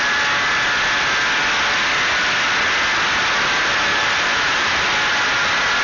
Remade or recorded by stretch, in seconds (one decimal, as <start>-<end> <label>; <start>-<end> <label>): 0.0-3.9 recorded; 3.9-4.7 remade; 4.7-5.8 recorded